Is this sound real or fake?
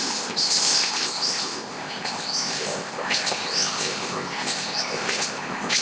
fake